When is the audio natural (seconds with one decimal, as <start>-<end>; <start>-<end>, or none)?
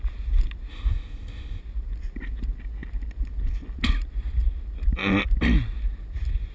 0.0-0.7; 1.6-6.5